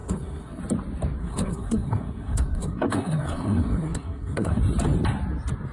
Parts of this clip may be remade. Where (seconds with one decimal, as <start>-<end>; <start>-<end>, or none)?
0.0-0.6; 1.2-4.6